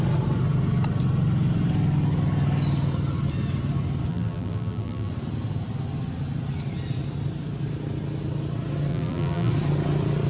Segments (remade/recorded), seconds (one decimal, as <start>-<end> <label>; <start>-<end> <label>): 0.0-4.1 recorded; 4.1-5.1 remade; 5.1-8.9 recorded; 8.9-9.5 remade; 9.5-10.3 recorded